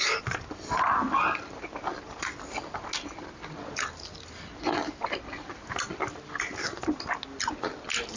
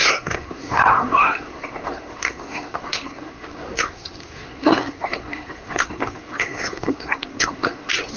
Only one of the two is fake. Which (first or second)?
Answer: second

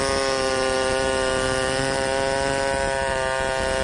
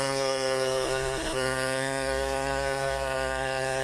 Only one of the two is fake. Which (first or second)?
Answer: second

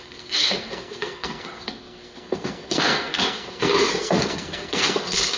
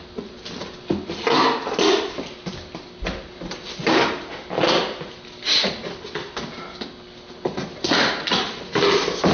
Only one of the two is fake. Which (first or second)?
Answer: first